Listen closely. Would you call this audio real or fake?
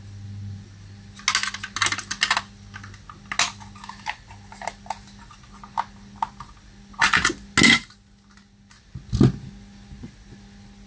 real